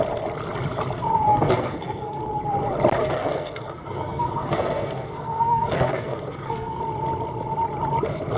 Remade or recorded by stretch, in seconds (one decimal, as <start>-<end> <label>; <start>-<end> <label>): 0.0-1.3 recorded; 1.3-2.2 remade; 2.2-3.0 recorded; 3.0-6.8 remade; 6.8-8.4 recorded